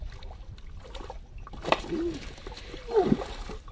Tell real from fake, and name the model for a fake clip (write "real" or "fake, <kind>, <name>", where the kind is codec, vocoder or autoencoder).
real